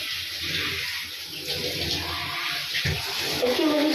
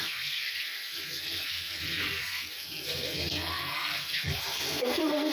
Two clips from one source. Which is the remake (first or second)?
second